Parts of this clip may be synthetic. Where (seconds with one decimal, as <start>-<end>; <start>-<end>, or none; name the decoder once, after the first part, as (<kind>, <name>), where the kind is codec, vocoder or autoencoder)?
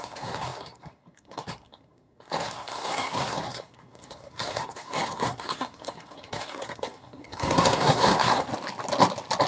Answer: 0.0-8.5 (codec, SNAC)